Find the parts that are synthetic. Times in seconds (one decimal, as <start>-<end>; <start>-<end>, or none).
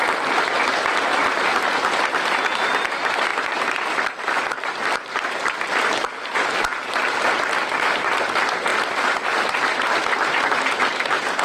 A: 3.3-8.2; 8.7-9.9